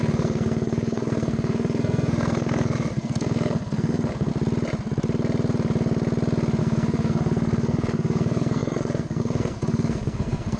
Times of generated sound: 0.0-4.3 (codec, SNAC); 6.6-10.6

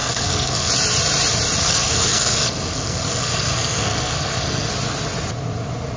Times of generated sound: 0.0-0.7 (codec, SNAC); 1.6-4.7

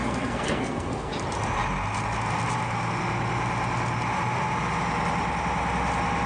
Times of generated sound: 0.0-1.1 (codec, SNAC)